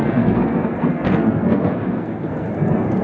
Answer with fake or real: fake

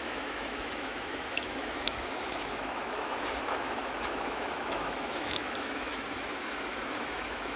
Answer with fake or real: fake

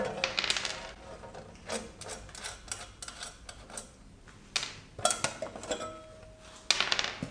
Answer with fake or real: real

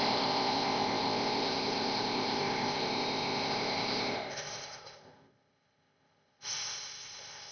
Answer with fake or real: fake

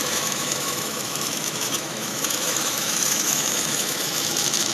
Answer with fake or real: fake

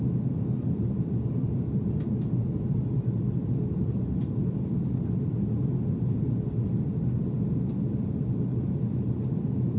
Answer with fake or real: real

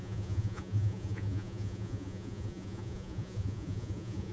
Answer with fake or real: fake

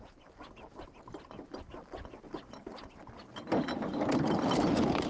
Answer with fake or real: real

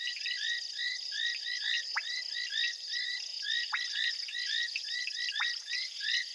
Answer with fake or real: real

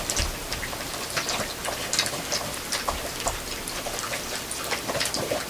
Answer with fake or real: fake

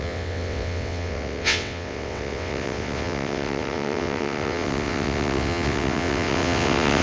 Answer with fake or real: fake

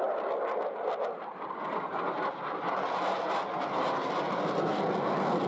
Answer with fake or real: real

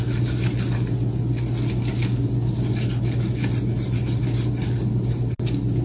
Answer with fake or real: real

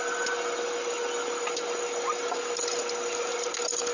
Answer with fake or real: real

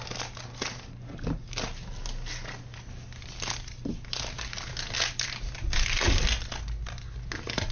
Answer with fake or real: real